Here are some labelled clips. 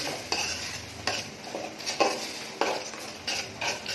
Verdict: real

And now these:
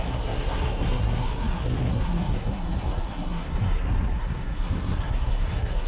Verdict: fake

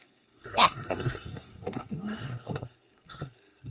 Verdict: fake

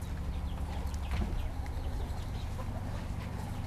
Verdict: real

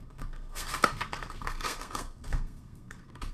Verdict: fake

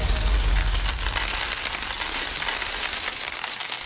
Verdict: real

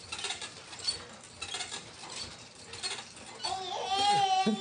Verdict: real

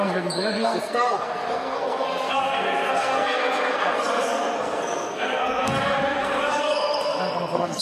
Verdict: fake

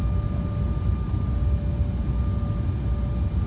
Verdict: real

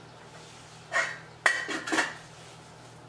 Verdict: real